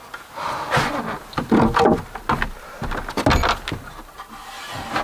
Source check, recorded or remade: recorded